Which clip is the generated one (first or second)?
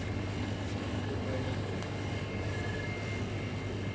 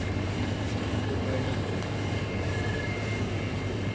second